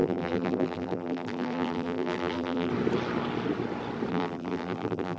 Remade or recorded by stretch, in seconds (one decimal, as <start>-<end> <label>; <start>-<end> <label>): 0.0-2.7 remade; 2.7-4.1 recorded; 4.1-5.2 remade